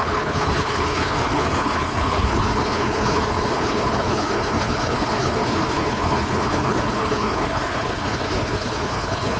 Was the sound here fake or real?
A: fake